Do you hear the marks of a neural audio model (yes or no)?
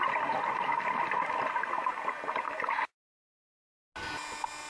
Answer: no